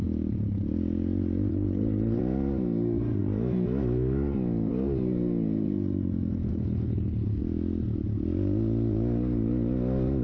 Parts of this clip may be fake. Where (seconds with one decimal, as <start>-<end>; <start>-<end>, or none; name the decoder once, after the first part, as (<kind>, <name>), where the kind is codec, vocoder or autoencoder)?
1.5-2.2 (codec, HILCodec); 6.5-7.4